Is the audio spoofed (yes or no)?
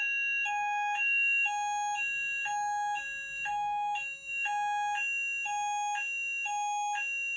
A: no